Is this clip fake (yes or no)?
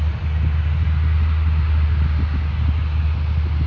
no